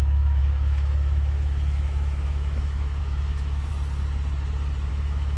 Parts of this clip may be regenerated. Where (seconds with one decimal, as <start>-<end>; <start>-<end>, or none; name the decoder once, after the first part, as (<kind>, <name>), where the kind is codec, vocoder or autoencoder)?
0.0-3.7 (autoencoder, DAC-VAE); 4.9-5.4